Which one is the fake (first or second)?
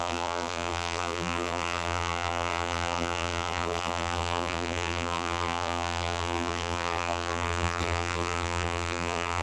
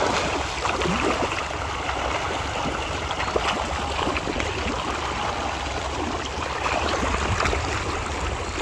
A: first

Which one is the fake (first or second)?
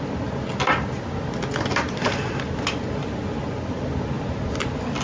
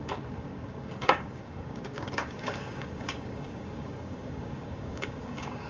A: second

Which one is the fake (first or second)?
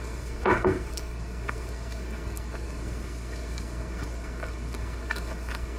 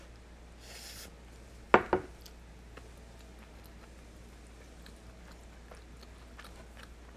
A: first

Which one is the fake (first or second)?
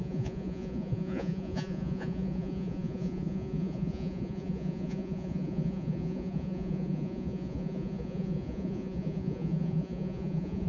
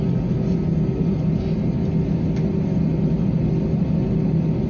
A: first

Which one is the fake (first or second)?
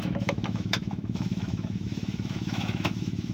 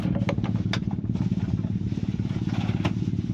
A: first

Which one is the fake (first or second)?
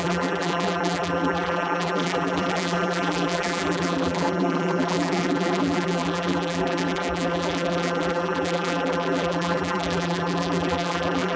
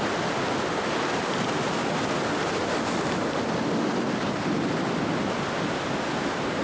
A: first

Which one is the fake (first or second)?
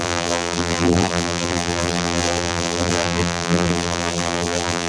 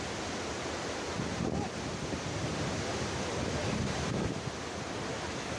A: first